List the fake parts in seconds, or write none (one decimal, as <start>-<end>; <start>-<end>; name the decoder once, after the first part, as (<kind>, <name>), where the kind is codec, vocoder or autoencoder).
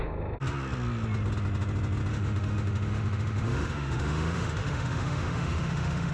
2.1-6.1 (autoencoder, DAC-VAE)